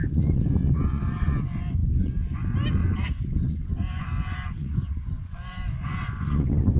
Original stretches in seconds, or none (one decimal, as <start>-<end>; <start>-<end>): none